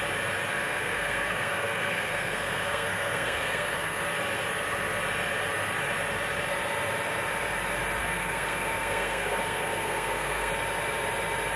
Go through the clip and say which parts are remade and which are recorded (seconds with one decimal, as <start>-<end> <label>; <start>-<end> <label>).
0.0-0.6 recorded; 0.6-4.0 remade; 4.0-8.0 recorded; 8.0-10.5 remade; 10.5-11.6 recorded